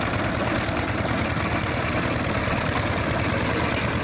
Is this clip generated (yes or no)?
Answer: no